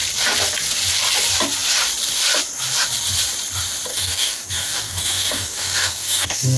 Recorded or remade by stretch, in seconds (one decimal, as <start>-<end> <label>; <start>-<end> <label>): 0.0-3.9 recorded; 3.9-6.6 remade